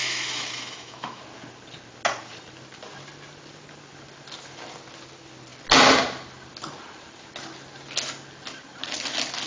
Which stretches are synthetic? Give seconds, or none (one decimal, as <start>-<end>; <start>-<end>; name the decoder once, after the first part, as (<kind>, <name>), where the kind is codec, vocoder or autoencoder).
0.0-1.2 (autoencoder, DAC-VAE)

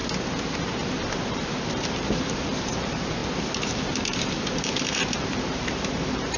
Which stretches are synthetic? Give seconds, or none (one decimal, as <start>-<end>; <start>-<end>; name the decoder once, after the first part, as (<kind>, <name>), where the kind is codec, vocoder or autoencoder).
1.3-3.2 (vocoder, BigVGAN v2); 4.3-6.4

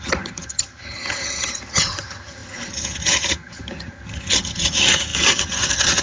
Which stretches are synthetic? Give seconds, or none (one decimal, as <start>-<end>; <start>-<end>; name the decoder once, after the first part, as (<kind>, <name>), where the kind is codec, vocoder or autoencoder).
0.0-6.0 (vocoder, HiFi-GAN)

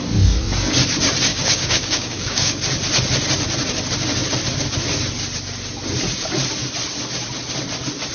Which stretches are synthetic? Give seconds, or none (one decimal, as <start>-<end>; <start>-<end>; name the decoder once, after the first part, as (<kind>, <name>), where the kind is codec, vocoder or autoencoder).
1.3-2.6 (codec, DAC)

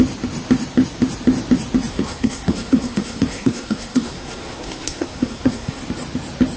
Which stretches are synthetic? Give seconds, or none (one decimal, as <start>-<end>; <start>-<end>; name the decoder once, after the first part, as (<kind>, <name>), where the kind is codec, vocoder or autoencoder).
1.9-5.8 (codec, SNAC)

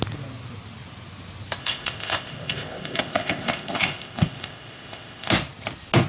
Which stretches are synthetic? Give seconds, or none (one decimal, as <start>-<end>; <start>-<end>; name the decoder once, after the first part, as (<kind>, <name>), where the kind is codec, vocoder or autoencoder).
1.6-5.3 (codec, ZipCodec)

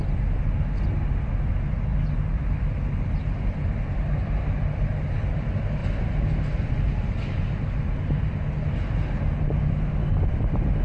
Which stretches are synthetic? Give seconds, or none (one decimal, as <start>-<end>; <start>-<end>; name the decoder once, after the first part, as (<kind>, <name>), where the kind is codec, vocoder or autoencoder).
none

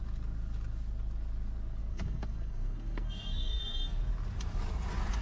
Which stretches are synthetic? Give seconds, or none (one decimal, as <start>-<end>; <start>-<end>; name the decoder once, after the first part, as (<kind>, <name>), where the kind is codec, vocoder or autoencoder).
1.8-4.0 (codec, SNAC)